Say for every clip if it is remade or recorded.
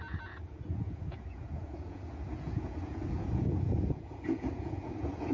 remade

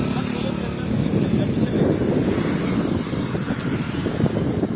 recorded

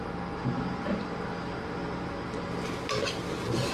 recorded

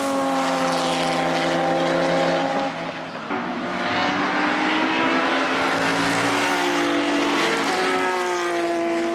recorded